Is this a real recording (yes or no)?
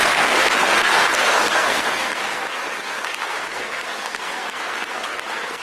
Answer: no